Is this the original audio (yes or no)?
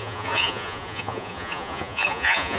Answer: no